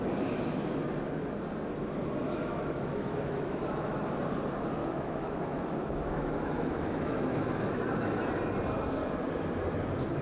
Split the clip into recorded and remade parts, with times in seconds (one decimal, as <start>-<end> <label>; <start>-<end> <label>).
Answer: 0.0-2.2 recorded; 2.2-4.1 remade; 4.1-4.8 recorded; 4.8-7.8 remade; 7.8-10.2 recorded

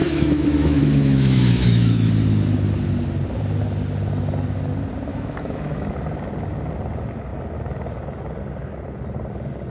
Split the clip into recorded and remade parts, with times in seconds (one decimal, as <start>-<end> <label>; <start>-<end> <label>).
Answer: 0.0-2.1 remade; 2.1-5.1 recorded; 5.1-5.9 remade; 5.9-9.7 recorded

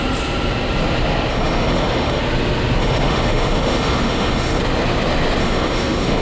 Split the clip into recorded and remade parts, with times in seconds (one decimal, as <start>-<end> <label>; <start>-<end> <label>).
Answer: 0.0-1.3 recorded; 1.3-2.2 remade; 2.2-2.8 recorded; 2.8-4.6 remade; 4.6-5.4 recorded; 5.4-6.2 remade

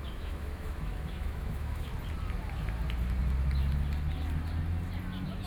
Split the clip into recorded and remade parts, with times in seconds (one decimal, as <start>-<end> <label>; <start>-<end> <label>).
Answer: 0.0-1.9 remade; 1.9-5.5 recorded

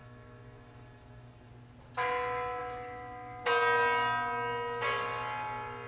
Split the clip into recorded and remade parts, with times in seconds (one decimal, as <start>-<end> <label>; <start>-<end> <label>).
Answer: 0.0-1.5 remade; 1.5-5.9 recorded